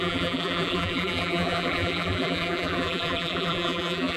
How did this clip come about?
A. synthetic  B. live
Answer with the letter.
A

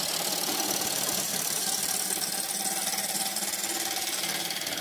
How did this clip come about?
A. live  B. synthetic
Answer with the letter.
B